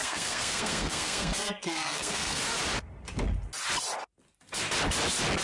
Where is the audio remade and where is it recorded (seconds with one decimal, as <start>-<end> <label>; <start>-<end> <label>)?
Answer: 0.0-2.4 remade; 2.4-5.4 recorded